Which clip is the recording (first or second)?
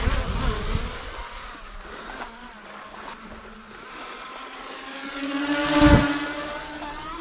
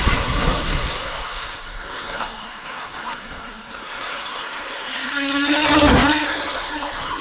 first